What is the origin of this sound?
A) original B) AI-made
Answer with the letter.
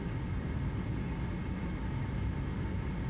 A